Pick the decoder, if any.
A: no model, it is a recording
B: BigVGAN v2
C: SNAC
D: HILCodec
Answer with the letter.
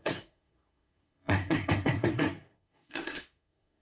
C